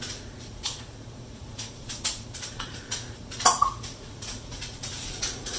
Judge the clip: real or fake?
fake